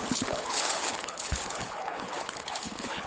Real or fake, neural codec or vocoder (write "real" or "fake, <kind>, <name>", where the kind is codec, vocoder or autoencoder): fake, codec, HILCodec